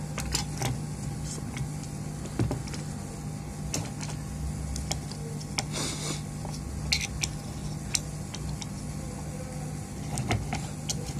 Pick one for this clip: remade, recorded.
recorded